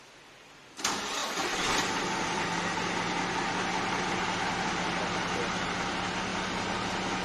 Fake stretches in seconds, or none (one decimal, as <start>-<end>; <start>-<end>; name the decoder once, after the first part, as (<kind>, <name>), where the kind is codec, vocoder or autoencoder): none